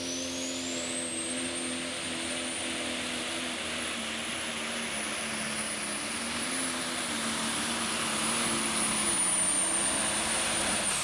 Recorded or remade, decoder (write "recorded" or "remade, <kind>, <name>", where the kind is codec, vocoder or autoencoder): recorded